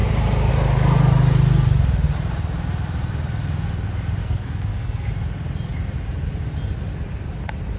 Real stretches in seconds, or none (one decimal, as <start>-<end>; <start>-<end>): 0.0-4.2; 5.1-7.8